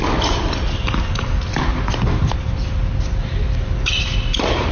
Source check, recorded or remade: recorded